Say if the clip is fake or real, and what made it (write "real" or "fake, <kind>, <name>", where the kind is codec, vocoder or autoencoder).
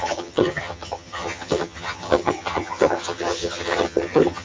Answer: fake, vocoder, HiFi-GAN